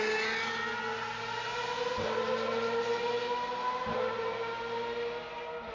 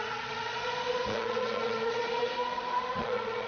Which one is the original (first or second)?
first